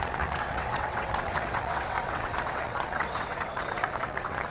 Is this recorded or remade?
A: remade